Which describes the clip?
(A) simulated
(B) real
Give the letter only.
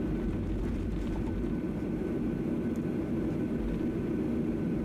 B